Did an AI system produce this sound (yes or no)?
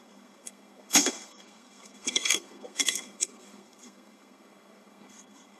yes